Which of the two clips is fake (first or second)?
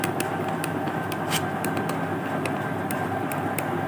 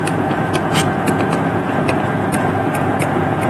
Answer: second